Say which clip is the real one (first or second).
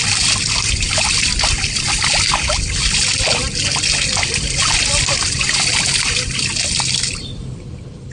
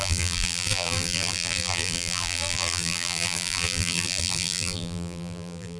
first